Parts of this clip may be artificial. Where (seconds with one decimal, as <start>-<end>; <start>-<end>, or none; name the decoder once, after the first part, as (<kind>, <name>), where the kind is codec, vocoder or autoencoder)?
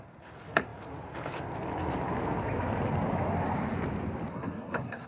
4.3-5.1 (codec, SNAC)